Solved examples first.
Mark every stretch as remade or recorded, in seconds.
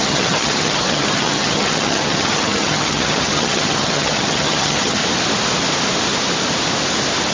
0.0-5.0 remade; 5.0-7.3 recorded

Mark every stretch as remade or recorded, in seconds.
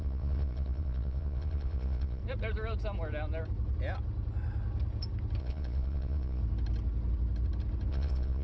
0.0-2.2 remade; 2.2-5.4 recorded; 5.4-6.4 remade; 6.4-7.9 recorded; 7.9-8.4 remade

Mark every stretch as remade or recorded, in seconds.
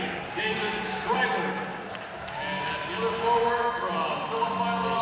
0.0-1.7 remade; 1.7-5.0 recorded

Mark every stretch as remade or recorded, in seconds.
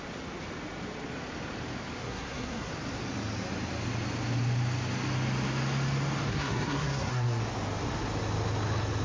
0.0-2.0 recorded; 2.0-2.7 remade; 2.7-6.3 recorded; 6.3-7.4 remade; 7.4-9.0 recorded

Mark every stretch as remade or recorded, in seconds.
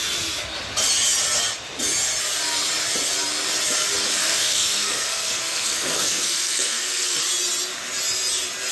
0.0-4.2 recorded; 4.2-7.2 remade; 7.2-8.7 recorded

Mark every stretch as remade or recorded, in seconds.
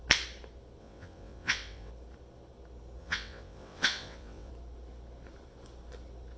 0.0-0.8 recorded; 0.8-1.9 remade; 1.9-3.0 recorded; 3.0-4.5 remade; 4.5-6.4 recorded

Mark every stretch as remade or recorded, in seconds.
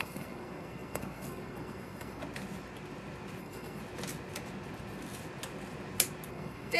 0.0-2.2 remade; 2.2-3.4 recorded; 3.4-3.8 remade; 3.8-6.3 recorded; 6.3-6.8 remade